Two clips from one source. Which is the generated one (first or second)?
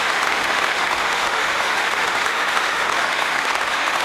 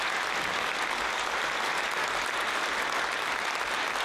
first